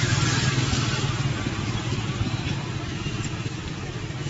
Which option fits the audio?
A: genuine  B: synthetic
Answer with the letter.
B